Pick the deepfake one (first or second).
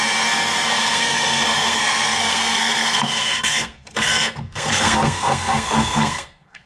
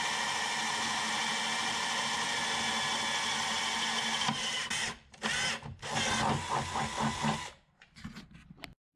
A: first